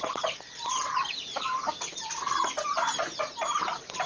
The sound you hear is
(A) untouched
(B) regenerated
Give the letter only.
A